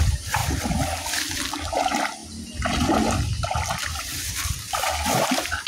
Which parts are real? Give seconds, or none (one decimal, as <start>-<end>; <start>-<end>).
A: 0.0-5.7